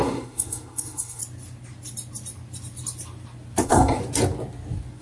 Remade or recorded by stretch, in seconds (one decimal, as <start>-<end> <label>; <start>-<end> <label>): 0.0-1.2 remade; 1.2-3.6 recorded; 3.6-4.0 remade; 4.0-5.0 recorded